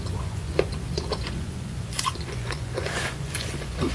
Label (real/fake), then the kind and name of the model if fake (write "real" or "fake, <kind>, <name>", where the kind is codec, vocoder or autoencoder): fake, vocoder, Vocos